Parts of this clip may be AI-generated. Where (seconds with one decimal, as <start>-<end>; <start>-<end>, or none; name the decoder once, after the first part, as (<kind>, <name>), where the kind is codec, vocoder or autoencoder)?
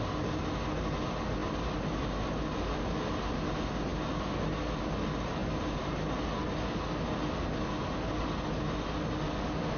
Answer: none